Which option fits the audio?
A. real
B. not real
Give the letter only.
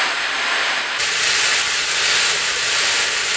B